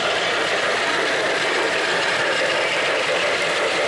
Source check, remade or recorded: remade